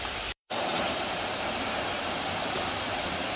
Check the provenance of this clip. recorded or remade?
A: remade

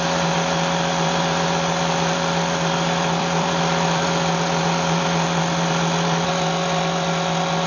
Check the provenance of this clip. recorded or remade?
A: remade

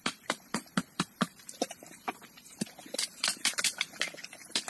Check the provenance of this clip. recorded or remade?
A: remade